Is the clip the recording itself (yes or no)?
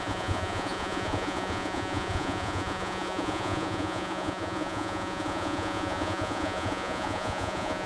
no